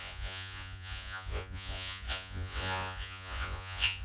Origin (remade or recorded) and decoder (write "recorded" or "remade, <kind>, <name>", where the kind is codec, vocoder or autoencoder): remade, vocoder, Vocos